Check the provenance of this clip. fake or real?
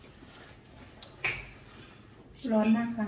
real